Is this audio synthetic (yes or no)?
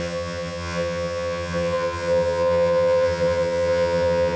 yes